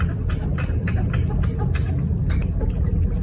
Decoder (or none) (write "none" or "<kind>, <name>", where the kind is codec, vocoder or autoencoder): none